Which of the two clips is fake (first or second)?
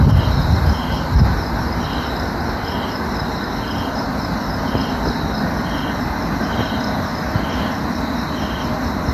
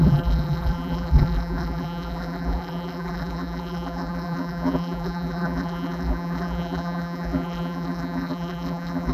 second